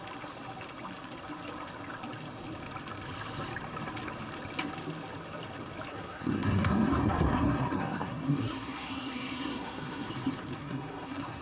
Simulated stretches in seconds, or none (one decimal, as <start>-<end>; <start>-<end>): 5.9-10.1; 10.6-11.4